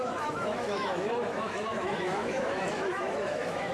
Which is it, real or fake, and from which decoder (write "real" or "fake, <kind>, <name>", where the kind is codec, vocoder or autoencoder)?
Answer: fake, autoencoder, DAC-VAE